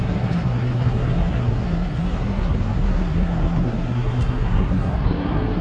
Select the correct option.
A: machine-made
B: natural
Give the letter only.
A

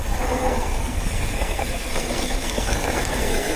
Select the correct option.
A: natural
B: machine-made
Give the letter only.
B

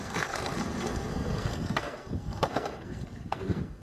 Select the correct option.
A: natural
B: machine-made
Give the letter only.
B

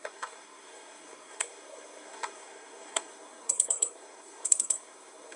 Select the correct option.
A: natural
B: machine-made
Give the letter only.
B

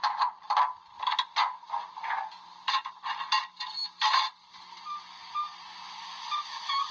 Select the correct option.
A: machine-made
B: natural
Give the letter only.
B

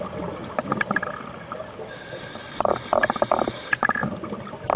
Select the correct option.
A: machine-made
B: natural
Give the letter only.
B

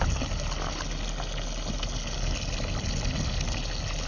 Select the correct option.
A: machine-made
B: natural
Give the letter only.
B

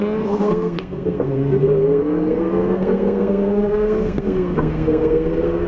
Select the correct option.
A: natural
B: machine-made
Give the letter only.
B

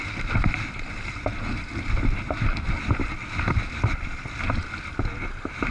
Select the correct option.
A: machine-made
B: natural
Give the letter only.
B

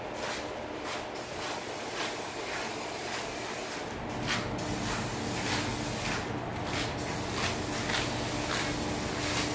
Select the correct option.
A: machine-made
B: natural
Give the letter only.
B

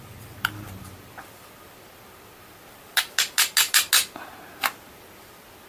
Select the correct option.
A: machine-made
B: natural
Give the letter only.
B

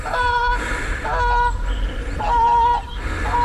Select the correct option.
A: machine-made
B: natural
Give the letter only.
B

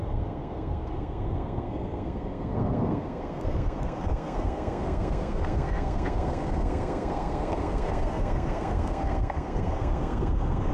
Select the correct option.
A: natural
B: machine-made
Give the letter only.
B